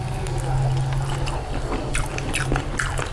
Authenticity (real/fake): real